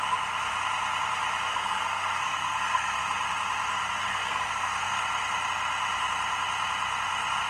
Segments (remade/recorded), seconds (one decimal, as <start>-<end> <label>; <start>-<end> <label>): 0.0-1.5 recorded; 1.5-3.0 remade; 3.0-4.0 recorded; 4.0-5.0 remade; 5.0-7.5 recorded

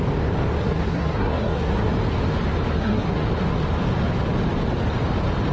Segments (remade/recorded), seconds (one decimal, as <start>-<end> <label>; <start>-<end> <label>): 0.0-0.6 recorded; 0.6-1.9 remade; 1.9-2.7 recorded; 2.7-3.3 remade; 3.3-5.5 recorded

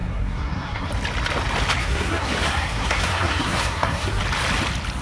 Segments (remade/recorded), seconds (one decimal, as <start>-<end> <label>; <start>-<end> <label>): 0.0-0.9 remade; 0.9-1.8 recorded; 1.8-4.2 remade; 4.2-5.0 recorded

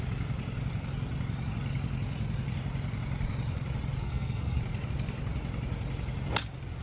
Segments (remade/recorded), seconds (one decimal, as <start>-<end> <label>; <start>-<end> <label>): 0.0-4.0 recorded; 4.0-4.6 remade; 4.6-6.8 recorded

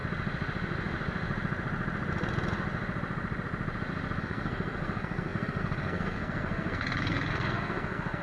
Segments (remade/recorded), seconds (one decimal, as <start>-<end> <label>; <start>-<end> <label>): 0.0-4.2 recorded; 4.2-8.2 remade